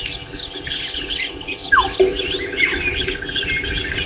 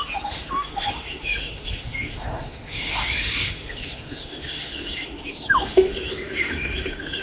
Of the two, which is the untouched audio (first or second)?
first